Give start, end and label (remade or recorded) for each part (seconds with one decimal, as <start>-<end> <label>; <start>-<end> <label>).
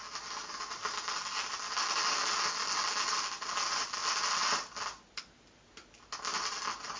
0.0-7.0 recorded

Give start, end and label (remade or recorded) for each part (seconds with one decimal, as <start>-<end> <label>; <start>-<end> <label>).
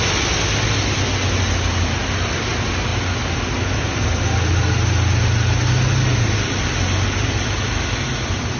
0.0-8.6 recorded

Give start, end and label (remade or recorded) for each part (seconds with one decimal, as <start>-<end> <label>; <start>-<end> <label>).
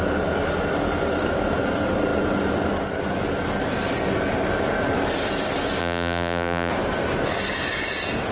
0.0-5.8 recorded; 5.8-6.7 remade; 6.7-8.3 recorded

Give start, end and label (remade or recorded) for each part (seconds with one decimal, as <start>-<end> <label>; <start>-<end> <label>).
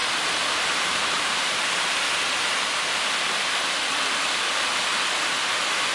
0.0-2.0 remade; 2.0-5.9 recorded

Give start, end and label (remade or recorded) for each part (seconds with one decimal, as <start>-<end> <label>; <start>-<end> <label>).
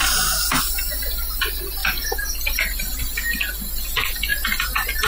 0.0-5.1 recorded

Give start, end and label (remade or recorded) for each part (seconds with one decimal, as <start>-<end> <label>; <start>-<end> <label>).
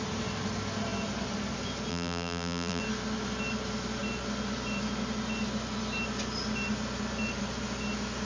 0.0-1.9 recorded; 1.9-2.8 remade; 2.8-8.2 recorded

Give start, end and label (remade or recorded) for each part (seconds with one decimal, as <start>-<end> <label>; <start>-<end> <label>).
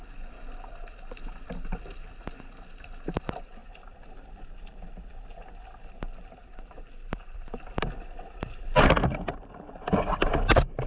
0.0-3.6 recorded; 3.6-5.0 remade; 5.0-6.4 recorded; 6.4-7.4 remade; 7.4-10.9 recorded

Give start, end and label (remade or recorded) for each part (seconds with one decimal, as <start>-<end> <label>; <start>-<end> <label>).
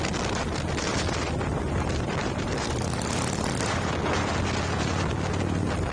0.0-0.9 recorded; 0.9-4.4 remade; 4.4-5.9 recorded